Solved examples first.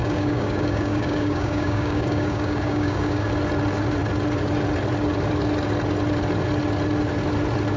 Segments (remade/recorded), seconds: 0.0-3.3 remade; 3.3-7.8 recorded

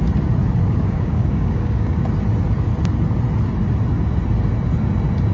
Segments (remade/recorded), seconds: 0.0-0.6 recorded; 0.6-2.0 remade; 2.0-5.3 recorded

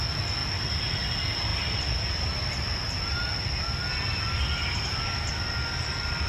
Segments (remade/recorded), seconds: 0.0-6.3 recorded

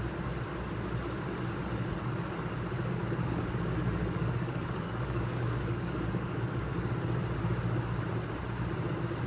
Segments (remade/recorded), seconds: 0.0-3.0 recorded; 3.0-6.9 remade; 6.9-9.3 recorded